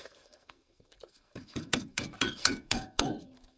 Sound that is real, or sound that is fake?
fake